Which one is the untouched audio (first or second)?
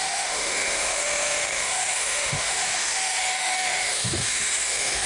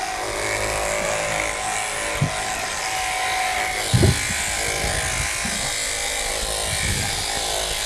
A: second